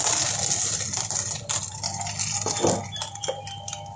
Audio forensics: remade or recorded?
recorded